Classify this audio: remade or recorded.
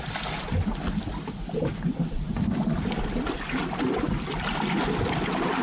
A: recorded